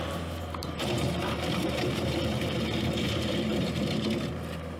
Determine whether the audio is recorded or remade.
remade